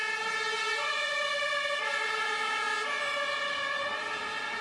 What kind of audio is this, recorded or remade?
recorded